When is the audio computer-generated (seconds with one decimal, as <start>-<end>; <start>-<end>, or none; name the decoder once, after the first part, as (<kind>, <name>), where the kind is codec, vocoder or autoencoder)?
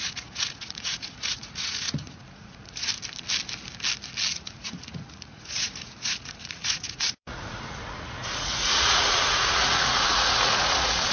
0.0-2.9 (vocoder, Vocos); 4.3-11.1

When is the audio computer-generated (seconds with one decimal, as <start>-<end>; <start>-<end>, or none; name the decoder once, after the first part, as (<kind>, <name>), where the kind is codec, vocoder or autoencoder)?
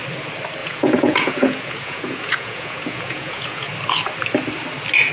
0.6-3.7 (vocoder, Vocos)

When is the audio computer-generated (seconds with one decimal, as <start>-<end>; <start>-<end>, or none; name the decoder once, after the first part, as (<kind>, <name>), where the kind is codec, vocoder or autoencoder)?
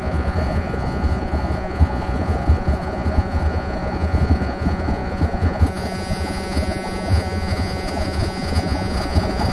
0.0-9.5 (vocoder, Vocos)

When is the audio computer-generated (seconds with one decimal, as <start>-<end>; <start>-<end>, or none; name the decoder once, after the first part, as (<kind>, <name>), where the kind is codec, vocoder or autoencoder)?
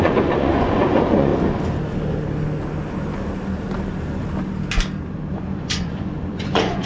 0.0-1.3 (vocoder, Vocos); 5.4-6.9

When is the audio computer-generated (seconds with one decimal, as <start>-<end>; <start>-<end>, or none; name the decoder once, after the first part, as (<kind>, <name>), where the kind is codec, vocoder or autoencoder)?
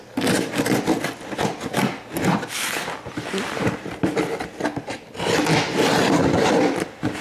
none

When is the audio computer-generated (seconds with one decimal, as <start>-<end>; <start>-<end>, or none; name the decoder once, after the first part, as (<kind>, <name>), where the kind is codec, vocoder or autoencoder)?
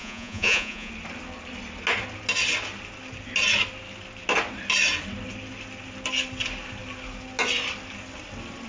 0.0-0.9 (vocoder, Vocos)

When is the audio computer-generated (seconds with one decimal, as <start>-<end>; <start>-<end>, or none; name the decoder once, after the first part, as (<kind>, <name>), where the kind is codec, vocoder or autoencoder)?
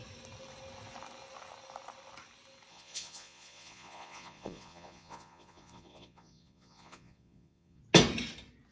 2.7-7.8 (vocoder, Vocos)